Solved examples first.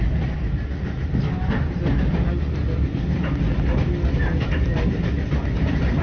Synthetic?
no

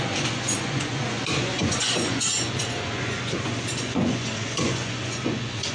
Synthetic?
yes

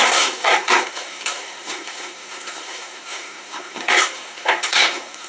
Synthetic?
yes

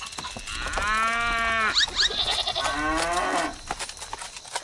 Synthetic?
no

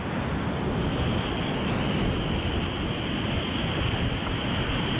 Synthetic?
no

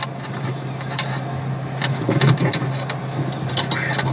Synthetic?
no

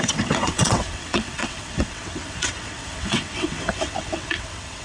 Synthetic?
yes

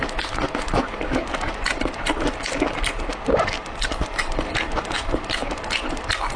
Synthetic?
no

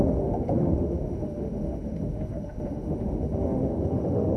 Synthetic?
yes